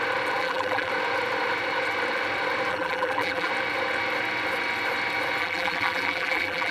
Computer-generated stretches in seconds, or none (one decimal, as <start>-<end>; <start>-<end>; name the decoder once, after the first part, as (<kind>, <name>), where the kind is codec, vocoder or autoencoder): 0.4-0.9 (vocoder, BigVGAN v2); 2.7-3.5; 5.4-6.7